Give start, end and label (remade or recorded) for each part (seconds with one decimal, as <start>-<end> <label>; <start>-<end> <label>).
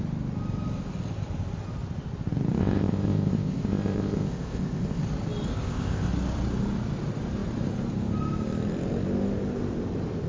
0.0-2.6 recorded; 2.6-5.0 remade; 5.0-5.5 recorded; 5.5-6.1 remade; 6.1-10.3 recorded